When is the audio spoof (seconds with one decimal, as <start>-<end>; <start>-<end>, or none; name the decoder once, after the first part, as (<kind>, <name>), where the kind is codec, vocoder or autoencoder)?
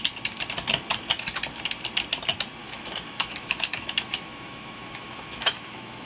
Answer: 2.6-6.1 (autoencoder, DAC-VAE)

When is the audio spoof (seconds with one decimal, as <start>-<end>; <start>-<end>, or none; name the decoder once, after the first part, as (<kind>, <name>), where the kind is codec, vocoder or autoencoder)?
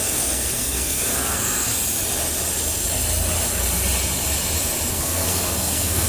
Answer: 0.0-1.7 (codec, SNAC); 4.9-6.1